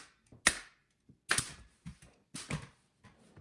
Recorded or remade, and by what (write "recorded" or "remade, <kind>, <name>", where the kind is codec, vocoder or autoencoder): recorded